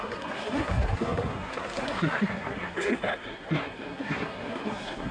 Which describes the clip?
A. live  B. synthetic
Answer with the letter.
B